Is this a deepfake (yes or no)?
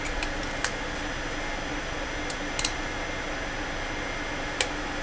no